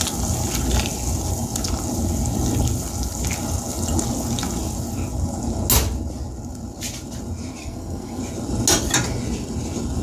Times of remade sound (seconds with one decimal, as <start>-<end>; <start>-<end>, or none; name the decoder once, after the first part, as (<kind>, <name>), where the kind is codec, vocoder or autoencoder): 7.6-8.2 (codec, SNAC)